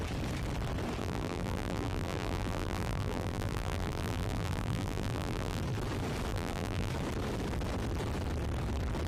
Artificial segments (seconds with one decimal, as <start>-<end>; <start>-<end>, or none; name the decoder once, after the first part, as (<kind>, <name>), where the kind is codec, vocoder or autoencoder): 1.0-5.6 (vocoder, BigVGAN v2); 6.3-6.9